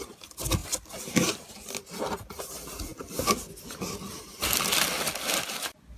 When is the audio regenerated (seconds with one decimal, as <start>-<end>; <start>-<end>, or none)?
none